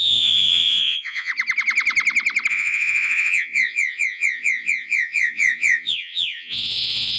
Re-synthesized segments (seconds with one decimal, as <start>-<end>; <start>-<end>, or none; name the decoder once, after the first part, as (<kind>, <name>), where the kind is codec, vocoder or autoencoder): 0.0-1.3 (vocoder, Vocos); 2.5-7.2